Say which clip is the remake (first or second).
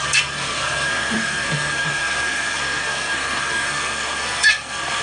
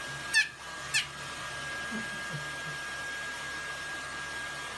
first